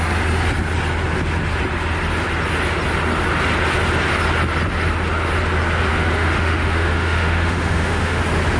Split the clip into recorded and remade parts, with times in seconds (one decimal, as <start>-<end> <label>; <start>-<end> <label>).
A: 0.0-5.9 recorded; 5.9-8.2 remade; 8.2-8.6 recorded